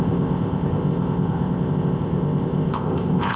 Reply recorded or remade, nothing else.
remade